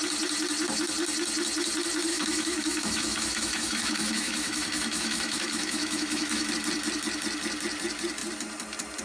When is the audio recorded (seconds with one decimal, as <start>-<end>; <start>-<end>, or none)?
0.0-2.1; 6.5-9.0